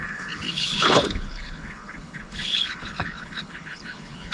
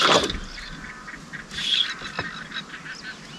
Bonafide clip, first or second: second